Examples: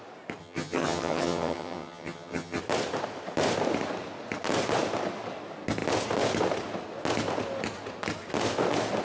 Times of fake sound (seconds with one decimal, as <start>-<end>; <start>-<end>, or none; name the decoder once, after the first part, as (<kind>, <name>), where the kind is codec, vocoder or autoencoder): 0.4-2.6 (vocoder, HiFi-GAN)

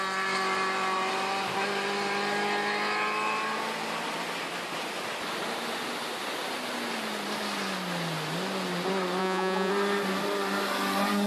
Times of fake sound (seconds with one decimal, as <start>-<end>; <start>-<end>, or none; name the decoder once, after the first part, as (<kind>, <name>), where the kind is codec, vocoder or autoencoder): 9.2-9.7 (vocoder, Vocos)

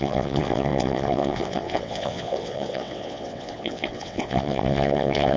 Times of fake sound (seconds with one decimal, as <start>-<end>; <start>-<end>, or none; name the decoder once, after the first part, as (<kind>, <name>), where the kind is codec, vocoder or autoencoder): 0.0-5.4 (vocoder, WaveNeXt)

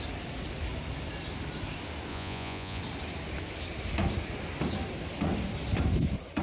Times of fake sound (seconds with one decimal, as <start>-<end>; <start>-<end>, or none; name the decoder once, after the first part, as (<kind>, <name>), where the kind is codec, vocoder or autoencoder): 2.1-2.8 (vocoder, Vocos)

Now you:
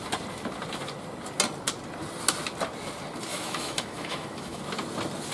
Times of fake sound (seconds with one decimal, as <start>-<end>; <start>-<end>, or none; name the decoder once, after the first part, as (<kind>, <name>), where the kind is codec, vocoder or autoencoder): 3.3-4.6 (autoencoder, DAC-VAE)

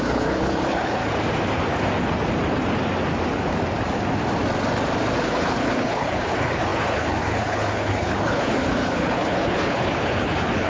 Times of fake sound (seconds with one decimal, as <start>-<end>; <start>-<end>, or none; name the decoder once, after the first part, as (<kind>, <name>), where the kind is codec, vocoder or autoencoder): 0.0-1.0 (codec, HILCodec); 5.2-10.7

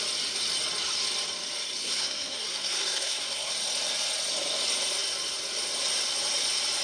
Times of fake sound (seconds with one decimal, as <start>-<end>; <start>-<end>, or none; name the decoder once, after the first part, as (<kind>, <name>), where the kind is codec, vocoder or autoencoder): 1.8-3.5 (codec, SNAC)